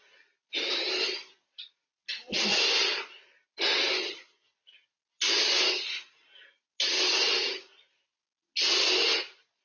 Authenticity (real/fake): real